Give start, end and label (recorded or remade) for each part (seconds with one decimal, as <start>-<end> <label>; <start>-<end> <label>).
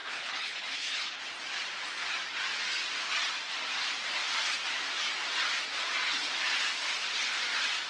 0.0-1.2 remade; 1.2-7.9 recorded